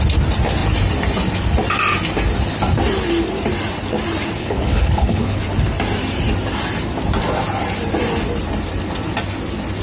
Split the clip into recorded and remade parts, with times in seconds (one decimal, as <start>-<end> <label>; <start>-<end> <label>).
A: 0.0-4.4 recorded; 4.4-5.4 remade; 5.4-9.8 recorded